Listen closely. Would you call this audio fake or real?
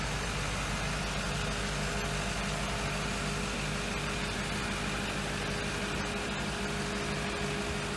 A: real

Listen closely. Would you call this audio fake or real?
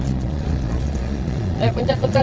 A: fake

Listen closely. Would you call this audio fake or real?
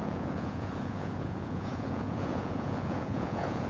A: fake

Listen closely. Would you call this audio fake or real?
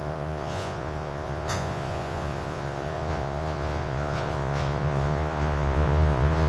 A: fake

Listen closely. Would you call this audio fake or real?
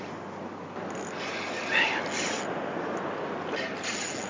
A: real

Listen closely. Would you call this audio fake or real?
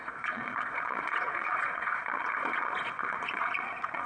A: fake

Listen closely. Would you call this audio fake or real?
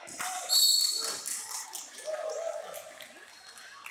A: real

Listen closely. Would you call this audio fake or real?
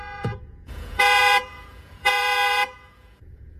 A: fake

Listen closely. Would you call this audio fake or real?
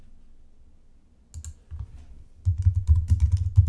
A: real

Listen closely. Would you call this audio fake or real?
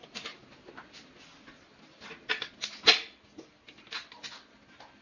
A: real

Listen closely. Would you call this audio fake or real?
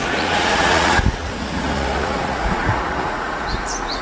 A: fake